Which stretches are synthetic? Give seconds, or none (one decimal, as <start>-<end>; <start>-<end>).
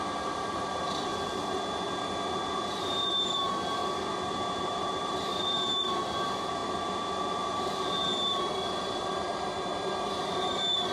0.0-1.1; 3.0-3.8; 4.3-6.6; 7.3-10.9